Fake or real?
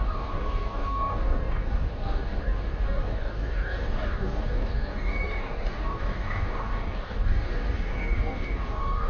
fake